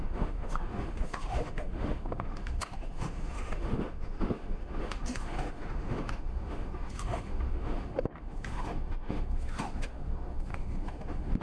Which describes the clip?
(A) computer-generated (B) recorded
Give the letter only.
A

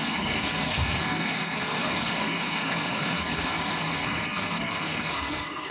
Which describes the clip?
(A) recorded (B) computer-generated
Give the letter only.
B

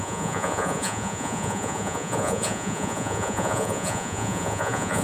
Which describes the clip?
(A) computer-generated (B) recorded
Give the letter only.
A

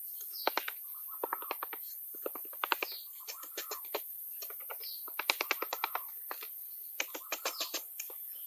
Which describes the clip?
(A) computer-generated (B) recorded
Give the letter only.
B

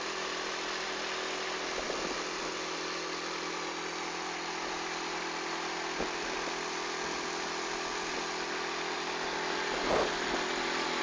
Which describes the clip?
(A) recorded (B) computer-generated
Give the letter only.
A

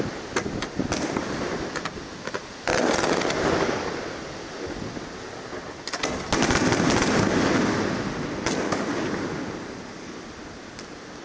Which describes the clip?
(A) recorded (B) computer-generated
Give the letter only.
A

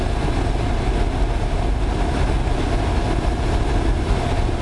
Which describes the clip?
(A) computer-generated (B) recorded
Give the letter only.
B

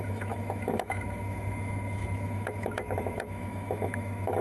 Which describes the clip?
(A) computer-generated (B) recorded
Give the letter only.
A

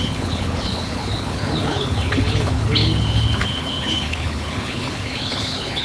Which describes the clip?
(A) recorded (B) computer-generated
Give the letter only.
B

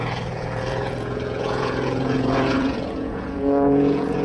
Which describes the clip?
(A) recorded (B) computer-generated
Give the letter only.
B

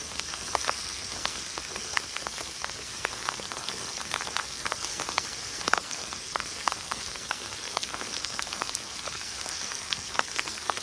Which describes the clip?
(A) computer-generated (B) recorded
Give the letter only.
A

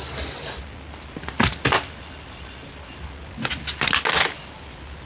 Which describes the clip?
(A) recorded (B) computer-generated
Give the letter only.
A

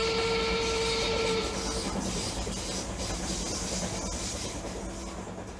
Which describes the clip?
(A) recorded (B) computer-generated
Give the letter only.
A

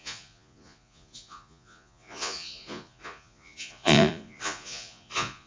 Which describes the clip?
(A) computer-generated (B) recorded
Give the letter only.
A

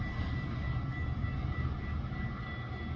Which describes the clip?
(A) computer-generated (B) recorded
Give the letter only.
B